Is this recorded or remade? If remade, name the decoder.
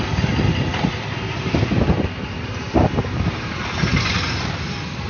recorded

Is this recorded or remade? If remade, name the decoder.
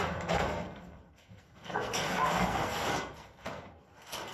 remade, codec, SNAC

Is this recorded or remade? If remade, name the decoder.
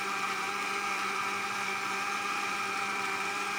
remade, vocoder, BigVGAN v2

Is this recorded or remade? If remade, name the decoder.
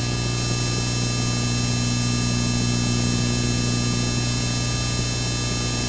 recorded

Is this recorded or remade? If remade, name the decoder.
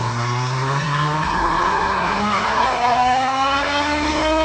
remade, codec, SNAC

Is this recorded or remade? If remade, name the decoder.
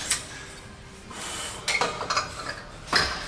recorded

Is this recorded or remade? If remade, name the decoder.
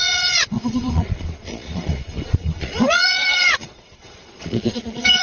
remade, vocoder, Vocos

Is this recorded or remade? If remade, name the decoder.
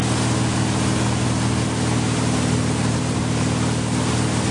recorded